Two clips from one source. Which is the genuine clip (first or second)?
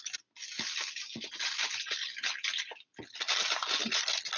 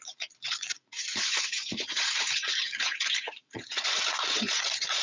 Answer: first